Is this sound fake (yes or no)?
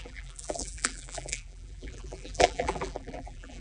yes